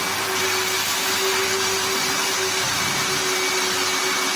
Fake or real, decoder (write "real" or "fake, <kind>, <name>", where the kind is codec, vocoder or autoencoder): real